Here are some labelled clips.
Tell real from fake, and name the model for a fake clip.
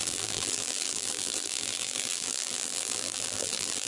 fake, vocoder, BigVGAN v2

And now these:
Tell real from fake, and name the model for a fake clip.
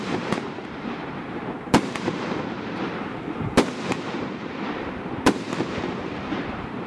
fake, vocoder, BigVGAN v2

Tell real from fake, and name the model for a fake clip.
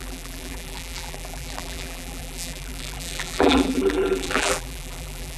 fake, vocoder, BigVGAN v2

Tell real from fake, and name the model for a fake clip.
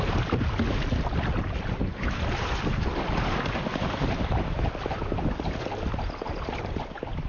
real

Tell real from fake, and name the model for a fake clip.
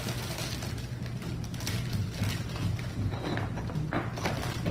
real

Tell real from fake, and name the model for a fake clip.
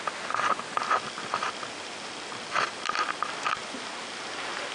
real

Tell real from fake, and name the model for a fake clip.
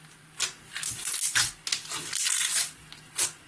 real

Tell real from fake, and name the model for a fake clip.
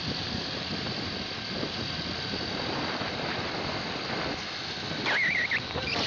real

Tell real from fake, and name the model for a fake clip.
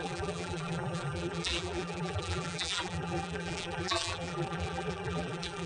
fake, vocoder, BigVGAN v2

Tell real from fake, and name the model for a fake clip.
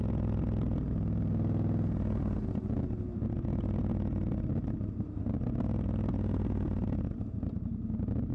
real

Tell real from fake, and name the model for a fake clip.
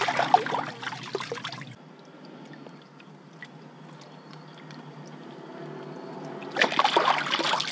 real